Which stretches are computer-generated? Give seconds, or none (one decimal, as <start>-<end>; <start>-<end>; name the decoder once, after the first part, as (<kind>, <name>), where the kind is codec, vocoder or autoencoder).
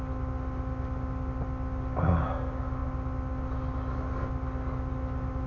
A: none